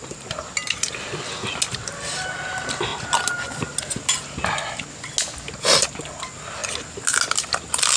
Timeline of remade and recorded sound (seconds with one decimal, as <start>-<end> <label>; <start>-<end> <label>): 0.0-8.0 recorded

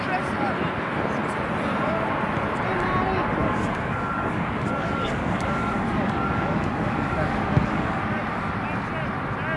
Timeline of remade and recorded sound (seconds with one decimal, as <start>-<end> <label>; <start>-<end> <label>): 0.0-3.4 recorded; 3.4-8.0 remade; 8.0-9.6 recorded

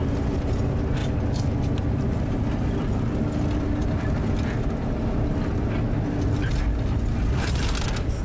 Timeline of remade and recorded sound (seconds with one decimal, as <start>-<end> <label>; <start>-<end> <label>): 0.0-8.2 recorded

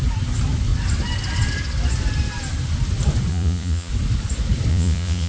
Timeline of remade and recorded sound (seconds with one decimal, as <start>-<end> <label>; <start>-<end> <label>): 0.0-3.3 recorded; 3.3-3.9 remade; 3.9-4.7 recorded; 4.7-5.3 remade

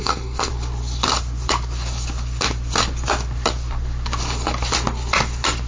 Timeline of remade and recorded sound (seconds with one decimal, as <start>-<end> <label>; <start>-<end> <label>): 0.0-0.5 remade; 0.5-5.7 recorded

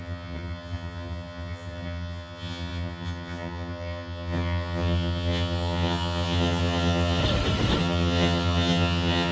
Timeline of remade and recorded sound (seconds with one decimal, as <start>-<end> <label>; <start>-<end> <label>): 0.0-7.2 remade; 7.2-7.8 recorded; 7.8-9.3 remade

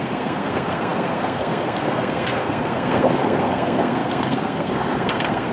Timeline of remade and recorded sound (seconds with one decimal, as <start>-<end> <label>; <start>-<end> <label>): 0.0-5.5 remade

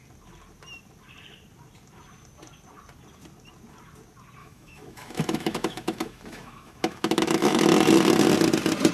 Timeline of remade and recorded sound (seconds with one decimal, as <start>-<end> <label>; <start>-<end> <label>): 0.0-4.4 recorded; 4.4-7.6 remade; 7.6-8.9 recorded